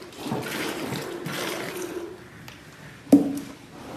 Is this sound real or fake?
fake